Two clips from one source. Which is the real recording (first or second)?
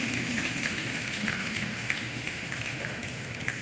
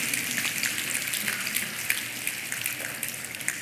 second